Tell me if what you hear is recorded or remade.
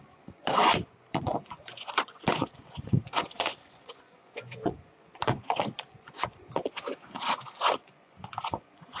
remade